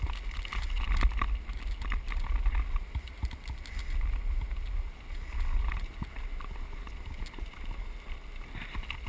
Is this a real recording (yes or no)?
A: yes